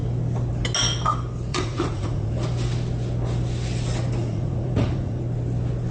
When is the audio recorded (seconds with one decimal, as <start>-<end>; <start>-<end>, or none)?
0.0-1.5; 2.3-4.2; 5.2-5.9